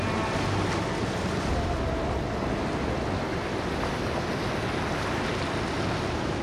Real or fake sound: real